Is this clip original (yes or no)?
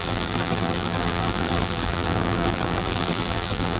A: no